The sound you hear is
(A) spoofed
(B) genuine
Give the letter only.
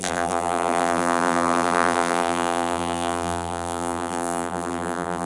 A